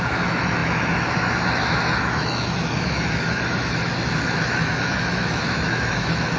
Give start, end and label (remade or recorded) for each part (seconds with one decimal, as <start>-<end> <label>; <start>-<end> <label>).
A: 0.0-6.4 remade